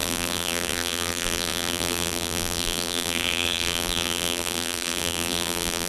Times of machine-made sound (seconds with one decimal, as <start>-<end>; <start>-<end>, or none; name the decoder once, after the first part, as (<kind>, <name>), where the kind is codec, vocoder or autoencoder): 0.0-5.9 (vocoder, BigVGAN v2)

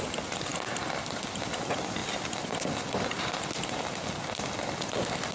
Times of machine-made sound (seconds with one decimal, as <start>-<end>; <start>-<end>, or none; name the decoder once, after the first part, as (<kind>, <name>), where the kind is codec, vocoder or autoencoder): none

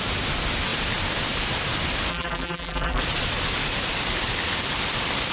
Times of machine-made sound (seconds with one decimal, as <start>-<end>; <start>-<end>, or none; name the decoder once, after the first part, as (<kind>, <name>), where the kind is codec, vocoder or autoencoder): 2.1-3.0 (vocoder, BigVGAN v2)